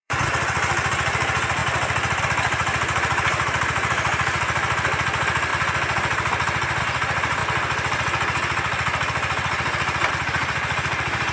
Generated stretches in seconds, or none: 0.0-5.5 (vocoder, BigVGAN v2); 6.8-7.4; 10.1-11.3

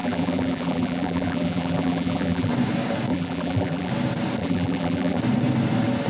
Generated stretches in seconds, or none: 0.0-2.5 (vocoder, BigVGAN v2); 3.1-3.9; 4.4-5.2

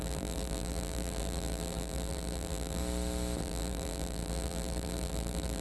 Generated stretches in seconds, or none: 0.0-2.8 (vocoder, BigVGAN v2); 3.4-5.6

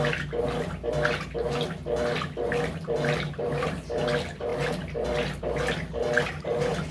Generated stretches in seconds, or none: none

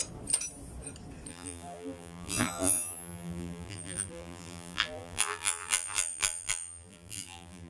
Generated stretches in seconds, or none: 1.3-7.7 (vocoder, BigVGAN v2)

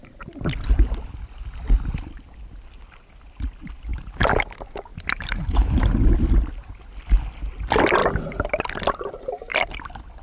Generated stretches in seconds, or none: 3.9-4.4 (vocoder, BigVGAN v2); 4.9-5.8

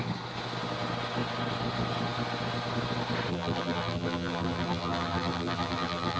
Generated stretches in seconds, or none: 3.3-6.2 (vocoder, BigVGAN v2)